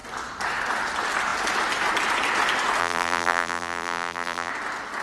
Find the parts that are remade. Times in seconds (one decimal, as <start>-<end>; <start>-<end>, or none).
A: 2.8-4.5